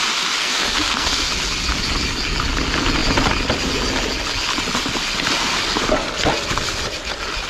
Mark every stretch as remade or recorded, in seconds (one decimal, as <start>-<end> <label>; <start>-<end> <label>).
0.0-0.4 recorded; 0.4-1.3 remade; 1.3-7.5 recorded